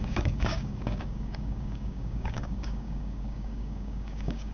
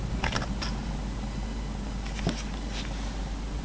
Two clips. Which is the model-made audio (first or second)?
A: first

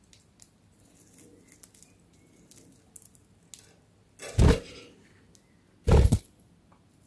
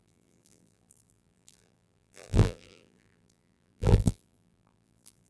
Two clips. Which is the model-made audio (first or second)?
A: second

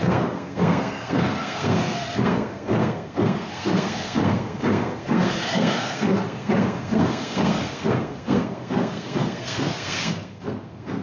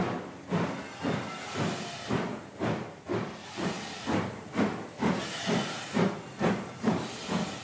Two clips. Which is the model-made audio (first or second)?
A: first